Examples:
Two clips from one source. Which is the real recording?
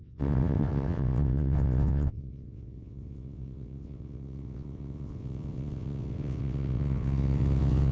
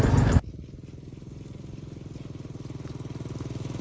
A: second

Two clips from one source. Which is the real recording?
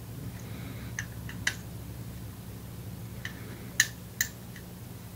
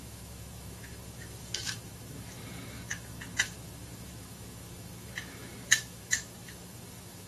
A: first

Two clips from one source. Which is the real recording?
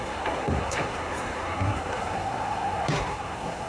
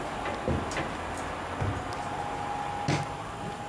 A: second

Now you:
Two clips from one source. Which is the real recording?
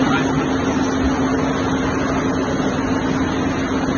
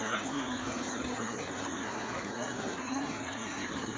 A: first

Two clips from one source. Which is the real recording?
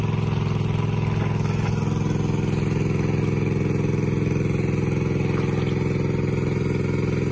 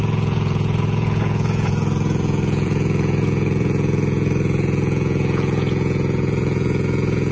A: first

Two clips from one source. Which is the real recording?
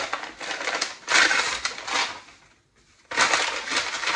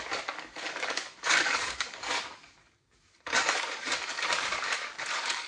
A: first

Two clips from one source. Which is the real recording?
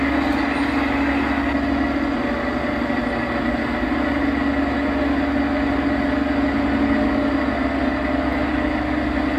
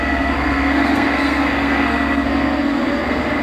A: first